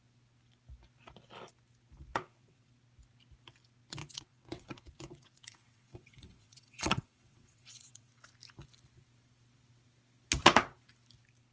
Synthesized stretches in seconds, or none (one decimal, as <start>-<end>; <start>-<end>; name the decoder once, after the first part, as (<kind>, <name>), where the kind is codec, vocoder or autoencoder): 2.1-2.7 (vocoder, WaveNeXt); 4.0-8.1